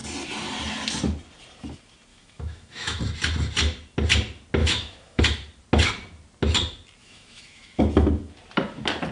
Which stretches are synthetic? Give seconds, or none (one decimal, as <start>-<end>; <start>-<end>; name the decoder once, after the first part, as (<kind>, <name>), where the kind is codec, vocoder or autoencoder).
2.1-3.0 (autoencoder, DAC-VAE); 4.6-5.2; 7.0-7.8